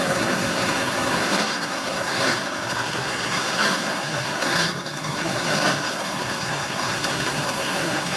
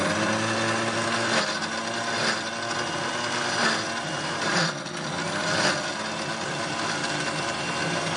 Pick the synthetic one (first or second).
first